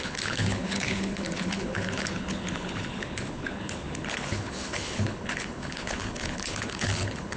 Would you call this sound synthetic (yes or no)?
yes